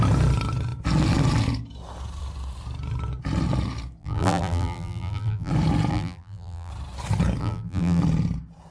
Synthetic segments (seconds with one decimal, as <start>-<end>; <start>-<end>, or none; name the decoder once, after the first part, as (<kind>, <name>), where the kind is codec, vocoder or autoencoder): 4.0-5.5 (vocoder, BigVGAN v2); 5.9-6.7; 7.4-8.0